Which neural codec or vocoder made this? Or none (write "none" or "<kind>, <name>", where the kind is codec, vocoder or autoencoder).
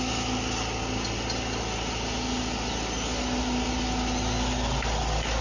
none